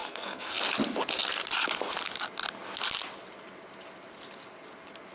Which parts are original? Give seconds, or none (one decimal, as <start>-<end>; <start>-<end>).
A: 0.6-5.1